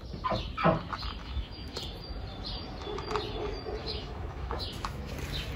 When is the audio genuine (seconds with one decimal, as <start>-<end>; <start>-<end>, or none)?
0.0-1.2; 1.8-3.8; 5.1-5.6